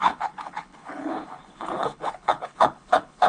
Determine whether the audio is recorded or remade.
remade